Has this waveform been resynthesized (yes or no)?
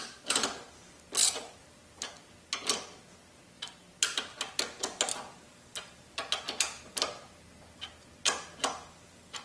no